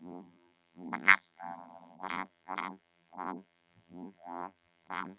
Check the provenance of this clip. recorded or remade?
remade